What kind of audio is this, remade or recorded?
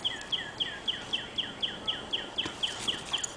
recorded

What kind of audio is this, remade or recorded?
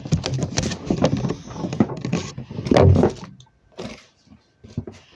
recorded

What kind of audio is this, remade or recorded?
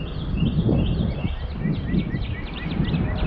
recorded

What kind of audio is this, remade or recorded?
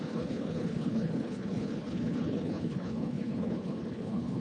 remade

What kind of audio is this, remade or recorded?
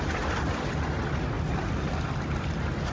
recorded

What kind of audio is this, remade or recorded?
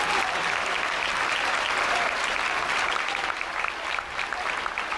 remade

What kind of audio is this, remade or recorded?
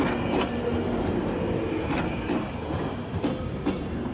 recorded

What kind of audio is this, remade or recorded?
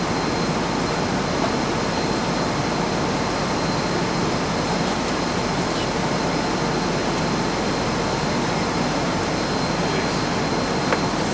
recorded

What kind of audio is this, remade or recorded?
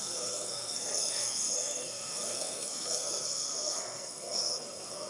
remade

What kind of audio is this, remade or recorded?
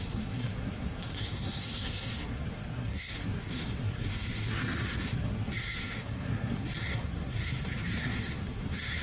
remade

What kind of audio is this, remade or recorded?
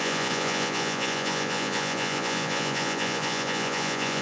remade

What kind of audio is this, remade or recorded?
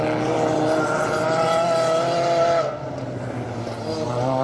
recorded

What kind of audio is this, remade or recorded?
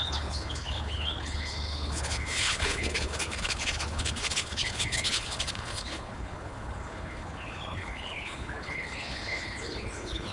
remade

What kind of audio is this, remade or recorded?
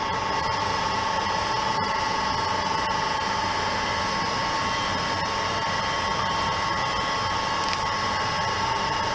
recorded